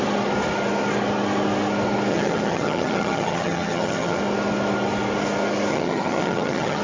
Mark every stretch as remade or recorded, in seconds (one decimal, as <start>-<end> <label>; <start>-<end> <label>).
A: 0.0-2.1 recorded; 2.1-4.2 remade; 4.2-5.7 recorded; 5.7-6.8 remade